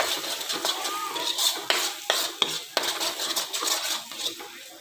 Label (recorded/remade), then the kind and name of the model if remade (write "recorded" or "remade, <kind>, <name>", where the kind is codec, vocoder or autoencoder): recorded